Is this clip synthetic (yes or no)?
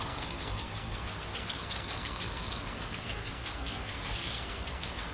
yes